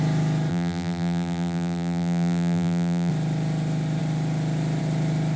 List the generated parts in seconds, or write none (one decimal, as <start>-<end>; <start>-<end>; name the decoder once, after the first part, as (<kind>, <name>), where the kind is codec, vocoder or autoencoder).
0.5-3.1 (vocoder, BigVGAN v2)